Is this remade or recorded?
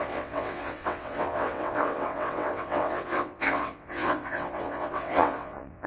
remade